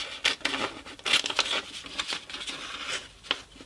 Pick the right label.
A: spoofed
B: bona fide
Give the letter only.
B